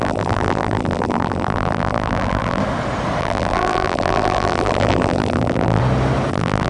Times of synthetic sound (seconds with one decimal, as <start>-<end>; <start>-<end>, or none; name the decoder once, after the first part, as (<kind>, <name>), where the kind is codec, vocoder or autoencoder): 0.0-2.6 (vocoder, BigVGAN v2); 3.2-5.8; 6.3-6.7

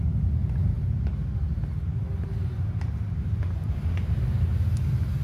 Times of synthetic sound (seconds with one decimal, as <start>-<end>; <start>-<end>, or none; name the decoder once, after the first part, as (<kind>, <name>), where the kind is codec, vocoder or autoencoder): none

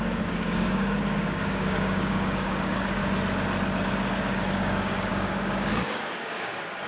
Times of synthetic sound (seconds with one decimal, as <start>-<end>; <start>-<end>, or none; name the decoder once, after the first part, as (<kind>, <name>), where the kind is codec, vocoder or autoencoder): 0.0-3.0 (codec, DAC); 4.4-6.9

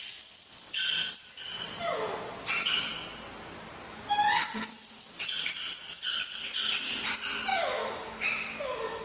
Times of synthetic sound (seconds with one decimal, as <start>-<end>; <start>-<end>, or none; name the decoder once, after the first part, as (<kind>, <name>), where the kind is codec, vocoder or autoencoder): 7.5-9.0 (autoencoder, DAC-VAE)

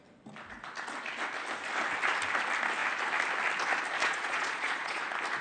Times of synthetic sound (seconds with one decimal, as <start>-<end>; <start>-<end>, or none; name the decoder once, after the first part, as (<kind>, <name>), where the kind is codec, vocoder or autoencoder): 4.0-5.0 (vocoder, Vocos)

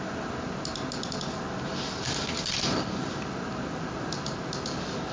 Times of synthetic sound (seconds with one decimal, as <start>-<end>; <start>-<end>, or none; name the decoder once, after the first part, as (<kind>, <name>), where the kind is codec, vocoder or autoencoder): none

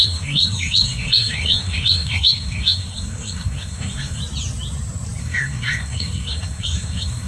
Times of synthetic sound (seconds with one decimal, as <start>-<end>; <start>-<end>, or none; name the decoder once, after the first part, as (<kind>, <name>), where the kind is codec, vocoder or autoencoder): 0.0-4.2 (codec, SNAC); 5.2-7.3

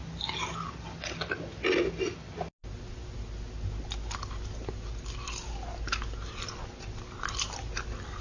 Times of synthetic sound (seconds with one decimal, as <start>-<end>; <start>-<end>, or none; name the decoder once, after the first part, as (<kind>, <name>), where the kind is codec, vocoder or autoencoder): none